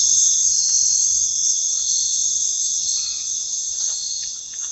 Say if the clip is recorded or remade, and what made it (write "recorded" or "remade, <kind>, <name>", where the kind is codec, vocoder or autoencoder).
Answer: remade, vocoder, WaveNeXt